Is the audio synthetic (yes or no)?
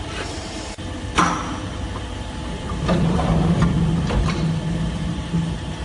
yes